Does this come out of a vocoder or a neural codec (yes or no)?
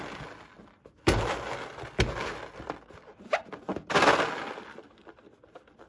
no